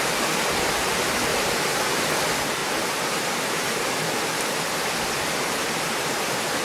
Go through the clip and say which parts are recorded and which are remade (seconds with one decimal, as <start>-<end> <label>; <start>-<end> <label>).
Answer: 0.0-1.3 recorded; 1.3-1.9 remade; 1.9-6.6 recorded